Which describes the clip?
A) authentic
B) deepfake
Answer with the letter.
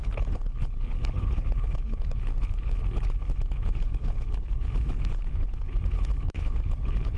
B